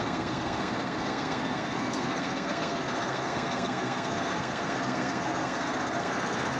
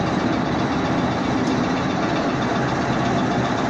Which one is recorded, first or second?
second